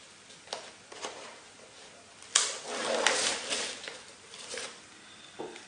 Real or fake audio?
real